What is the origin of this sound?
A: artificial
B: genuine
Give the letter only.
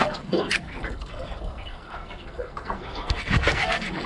A